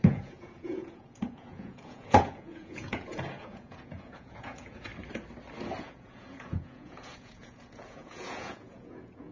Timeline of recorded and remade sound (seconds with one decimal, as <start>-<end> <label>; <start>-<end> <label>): 0.0-4.9 remade; 4.9-5.8 recorded; 5.8-9.3 remade